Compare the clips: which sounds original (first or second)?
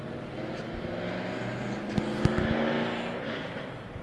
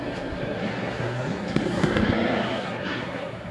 first